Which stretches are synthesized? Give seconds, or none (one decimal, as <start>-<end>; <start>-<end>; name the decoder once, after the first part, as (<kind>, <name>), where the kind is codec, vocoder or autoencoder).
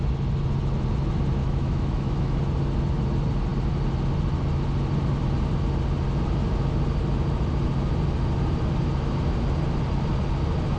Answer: 1.4-2.4 (autoencoder, DAC-VAE)